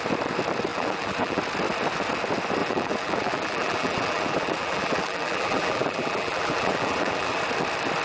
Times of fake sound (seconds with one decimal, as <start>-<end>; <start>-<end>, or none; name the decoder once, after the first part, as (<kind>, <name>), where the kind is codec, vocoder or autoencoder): 0.7-1.4 (vocoder, BigVGAN v2); 2.6-7.4